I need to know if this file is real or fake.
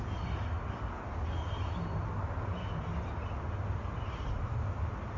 real